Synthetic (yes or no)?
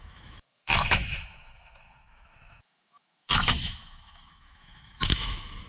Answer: yes